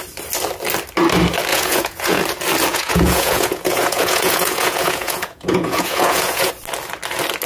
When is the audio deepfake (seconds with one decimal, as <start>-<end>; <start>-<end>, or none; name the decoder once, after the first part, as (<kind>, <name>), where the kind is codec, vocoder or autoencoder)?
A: 1.5-2.2 (vocoder, Vocos); 2.7-6.5